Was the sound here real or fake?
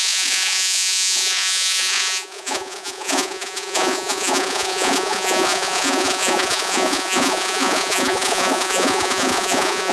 fake